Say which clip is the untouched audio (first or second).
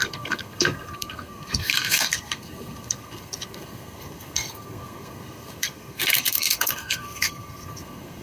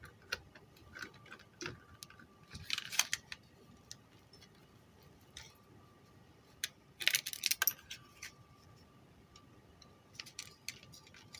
second